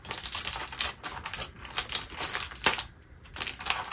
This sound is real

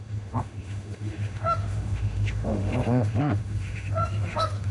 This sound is fake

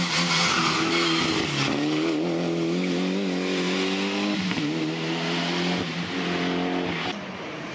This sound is real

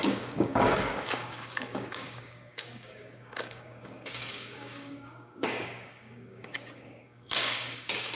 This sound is fake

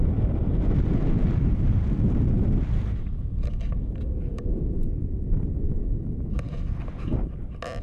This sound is real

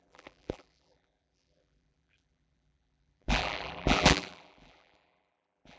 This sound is fake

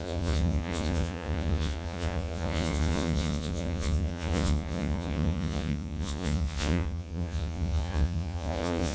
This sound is fake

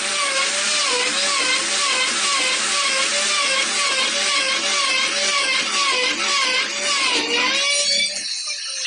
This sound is real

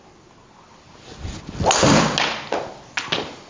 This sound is real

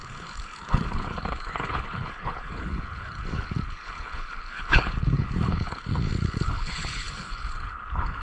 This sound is fake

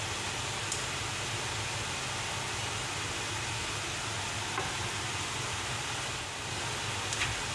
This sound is real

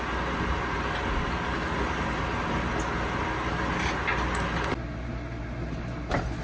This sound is real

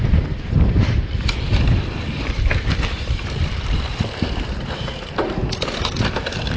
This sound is fake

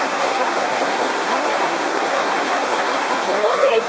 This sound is fake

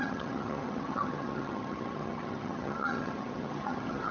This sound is fake